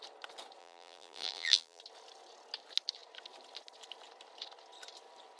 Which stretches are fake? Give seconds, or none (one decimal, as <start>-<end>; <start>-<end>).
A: 0.6-1.8